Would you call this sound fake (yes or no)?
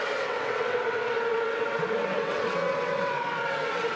yes